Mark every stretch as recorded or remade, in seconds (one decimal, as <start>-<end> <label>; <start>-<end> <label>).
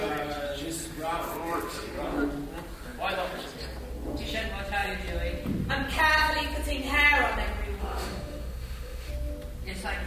0.0-7.8 recorded; 7.8-9.1 remade; 9.1-10.1 recorded